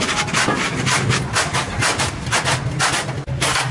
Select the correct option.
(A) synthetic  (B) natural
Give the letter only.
B